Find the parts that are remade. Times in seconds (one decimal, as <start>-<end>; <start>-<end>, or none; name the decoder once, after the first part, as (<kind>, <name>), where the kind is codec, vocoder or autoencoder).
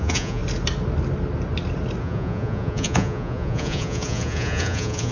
0.0-0.4 (vocoder, Vocos); 2.0-5.1